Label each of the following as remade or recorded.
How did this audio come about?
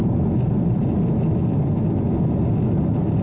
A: recorded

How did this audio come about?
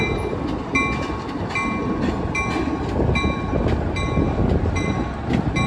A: recorded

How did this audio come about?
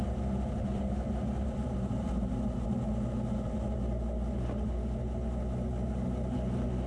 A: recorded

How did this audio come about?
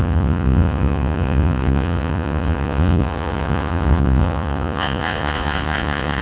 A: remade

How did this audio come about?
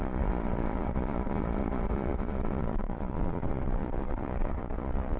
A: remade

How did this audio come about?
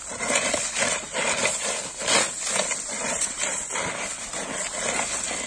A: recorded